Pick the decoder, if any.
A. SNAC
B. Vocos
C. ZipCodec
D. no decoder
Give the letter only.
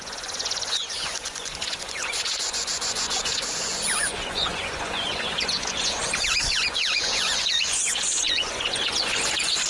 B